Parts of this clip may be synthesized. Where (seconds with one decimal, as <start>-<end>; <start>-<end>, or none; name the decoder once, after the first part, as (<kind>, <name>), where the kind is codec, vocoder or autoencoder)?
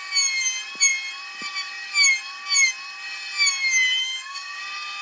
4.0-4.6 (codec, DAC)